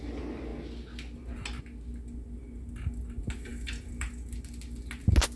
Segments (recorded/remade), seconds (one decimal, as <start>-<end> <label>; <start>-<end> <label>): 0.0-5.4 recorded